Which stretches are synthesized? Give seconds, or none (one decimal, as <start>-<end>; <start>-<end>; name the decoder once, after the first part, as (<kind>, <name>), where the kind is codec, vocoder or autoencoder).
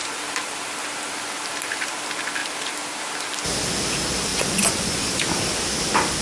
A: 4.3-5.1 (vocoder, Vocos)